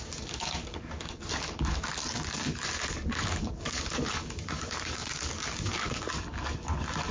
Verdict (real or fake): fake